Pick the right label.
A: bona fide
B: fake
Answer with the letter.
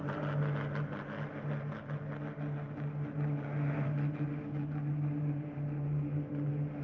A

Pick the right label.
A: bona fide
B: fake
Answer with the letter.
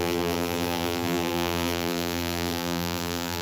B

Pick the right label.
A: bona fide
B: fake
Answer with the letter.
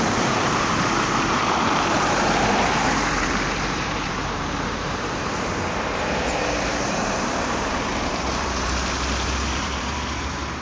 B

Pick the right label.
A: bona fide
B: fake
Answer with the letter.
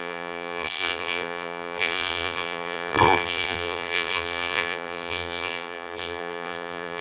B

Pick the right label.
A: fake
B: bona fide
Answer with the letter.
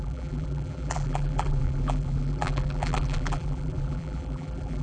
A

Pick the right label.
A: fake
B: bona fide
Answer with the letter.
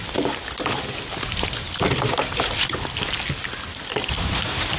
B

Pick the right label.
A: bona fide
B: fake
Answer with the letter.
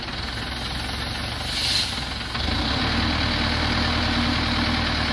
A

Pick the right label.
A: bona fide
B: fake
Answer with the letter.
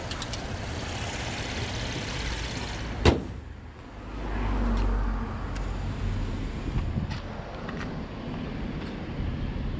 A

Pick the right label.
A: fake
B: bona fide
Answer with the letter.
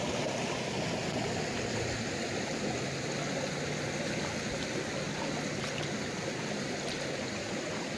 B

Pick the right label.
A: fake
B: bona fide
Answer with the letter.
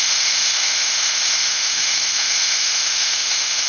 A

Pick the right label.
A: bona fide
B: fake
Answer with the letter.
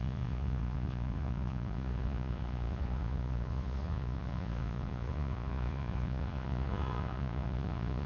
B